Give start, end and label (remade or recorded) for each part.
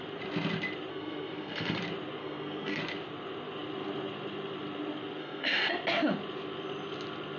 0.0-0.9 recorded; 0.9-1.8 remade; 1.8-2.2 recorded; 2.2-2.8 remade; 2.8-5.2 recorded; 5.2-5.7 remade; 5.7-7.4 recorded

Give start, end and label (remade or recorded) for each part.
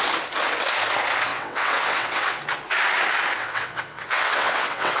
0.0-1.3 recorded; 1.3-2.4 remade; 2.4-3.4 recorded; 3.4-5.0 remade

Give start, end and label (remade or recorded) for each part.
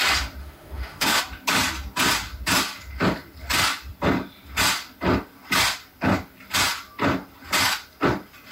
0.0-0.4 recorded; 0.4-1.2 remade; 1.2-8.5 recorded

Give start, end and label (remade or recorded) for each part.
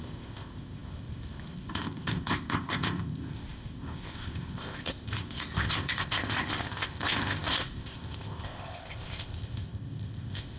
0.0-10.6 remade